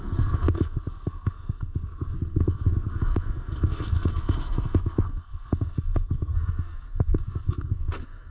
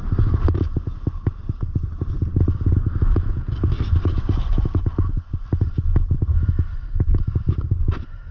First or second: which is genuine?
second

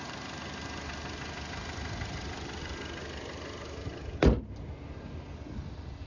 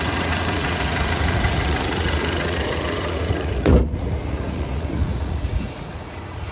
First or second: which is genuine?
first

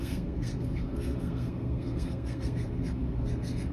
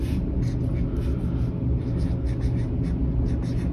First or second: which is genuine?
second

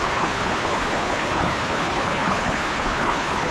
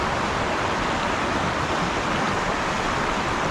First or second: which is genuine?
second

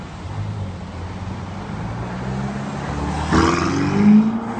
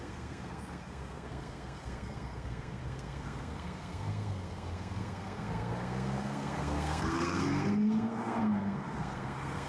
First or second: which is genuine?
first